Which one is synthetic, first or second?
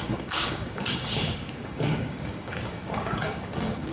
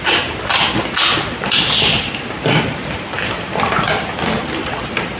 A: first